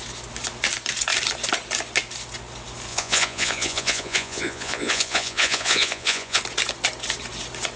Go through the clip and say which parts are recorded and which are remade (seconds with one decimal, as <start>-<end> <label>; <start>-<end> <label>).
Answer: 0.0-2.9 recorded; 2.9-6.4 remade; 6.4-7.8 recorded